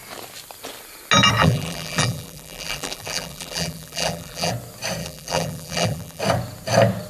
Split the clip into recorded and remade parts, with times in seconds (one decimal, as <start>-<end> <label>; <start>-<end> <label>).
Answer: 0.0-1.4 recorded; 1.4-4.5 remade; 4.5-5.0 recorded; 5.0-6.2 remade; 6.2-7.1 recorded